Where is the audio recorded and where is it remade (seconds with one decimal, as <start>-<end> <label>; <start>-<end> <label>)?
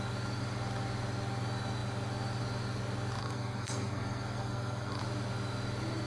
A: 0.0-3.2 recorded; 3.2-5.0 remade; 5.0-6.1 recorded